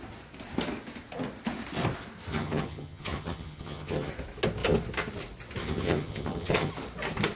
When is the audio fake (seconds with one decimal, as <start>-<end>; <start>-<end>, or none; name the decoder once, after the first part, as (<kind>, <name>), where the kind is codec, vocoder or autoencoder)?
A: 2.3-4.1 (vocoder, HiFi-GAN); 5.6-6.7